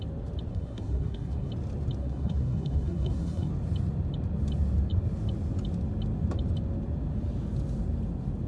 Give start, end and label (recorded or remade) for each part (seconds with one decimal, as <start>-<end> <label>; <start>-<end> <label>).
0.0-0.5 recorded; 0.5-1.5 remade; 1.5-2.0 recorded; 2.0-3.5 remade; 3.5-8.5 recorded